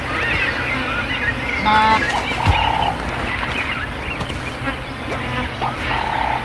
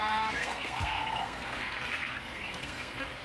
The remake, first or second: second